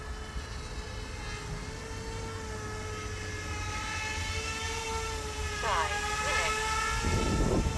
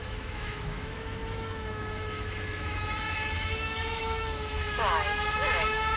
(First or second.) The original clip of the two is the first